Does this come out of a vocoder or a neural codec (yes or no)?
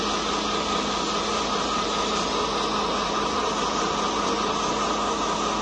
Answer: no